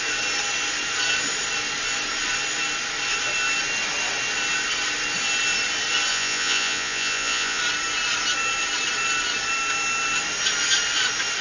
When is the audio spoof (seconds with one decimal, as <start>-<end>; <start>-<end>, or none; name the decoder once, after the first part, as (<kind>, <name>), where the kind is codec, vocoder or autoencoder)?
6.1-7.6 (vocoder, Vocos)